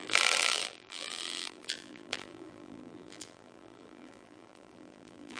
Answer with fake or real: fake